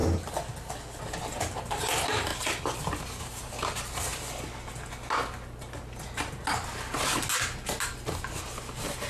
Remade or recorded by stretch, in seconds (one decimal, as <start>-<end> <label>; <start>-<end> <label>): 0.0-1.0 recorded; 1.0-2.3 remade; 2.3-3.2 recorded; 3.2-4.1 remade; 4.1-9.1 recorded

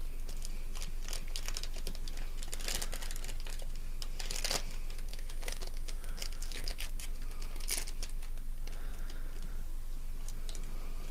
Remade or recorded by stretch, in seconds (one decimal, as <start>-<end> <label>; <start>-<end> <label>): 0.0-5.1 recorded; 5.1-6.8 remade; 6.8-11.1 recorded

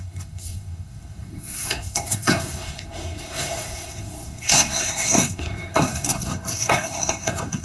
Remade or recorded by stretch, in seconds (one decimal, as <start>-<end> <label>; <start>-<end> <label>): 0.0-7.6 remade

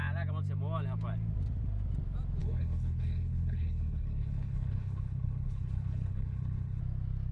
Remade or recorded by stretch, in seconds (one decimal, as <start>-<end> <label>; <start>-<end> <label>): 0.0-2.4 recorded; 2.4-6.8 remade; 6.8-7.3 recorded